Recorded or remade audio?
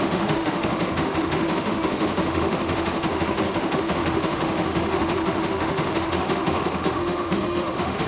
remade